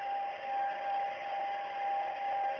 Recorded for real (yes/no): yes